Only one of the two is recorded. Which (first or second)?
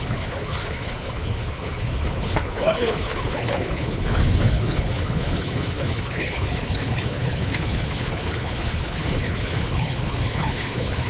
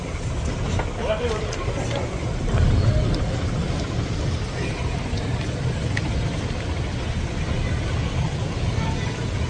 second